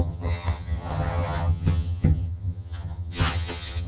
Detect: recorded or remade remade